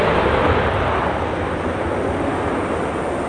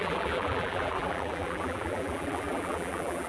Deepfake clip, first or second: second